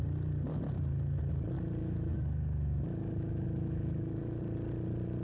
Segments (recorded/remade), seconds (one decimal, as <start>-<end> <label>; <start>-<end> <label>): 0.0-1.8 recorded; 1.8-4.4 remade; 4.4-5.2 recorded